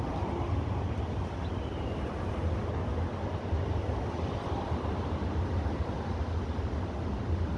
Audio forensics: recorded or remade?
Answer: recorded